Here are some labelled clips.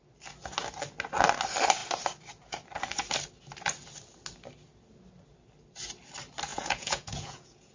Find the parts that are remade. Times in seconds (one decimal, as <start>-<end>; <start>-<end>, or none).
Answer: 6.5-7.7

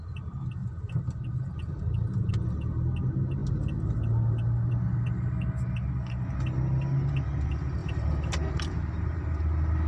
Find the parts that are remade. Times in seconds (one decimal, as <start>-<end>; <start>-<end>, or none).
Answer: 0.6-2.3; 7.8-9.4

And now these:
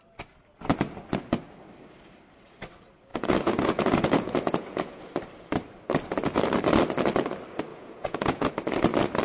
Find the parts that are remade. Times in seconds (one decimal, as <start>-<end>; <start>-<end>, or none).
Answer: 3.1-5.1; 7.7-8.5

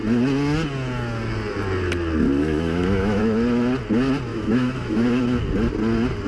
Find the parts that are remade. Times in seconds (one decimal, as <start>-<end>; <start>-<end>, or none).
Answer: 2.4-3.2; 4.3-5.2

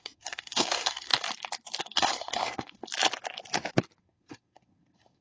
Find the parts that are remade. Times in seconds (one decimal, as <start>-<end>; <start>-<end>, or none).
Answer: 0.0-1.1; 1.8-2.8; 4.0-5.2

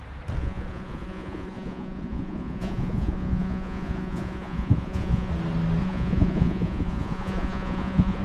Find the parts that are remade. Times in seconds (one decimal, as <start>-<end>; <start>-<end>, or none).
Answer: 0.4-5.3; 5.8-8.2

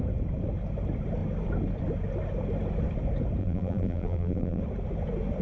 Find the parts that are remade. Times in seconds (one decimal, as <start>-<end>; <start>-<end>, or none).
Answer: 3.4-4.6

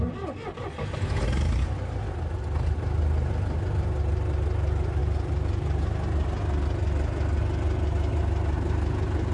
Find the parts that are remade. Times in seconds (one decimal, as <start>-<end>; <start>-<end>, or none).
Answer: none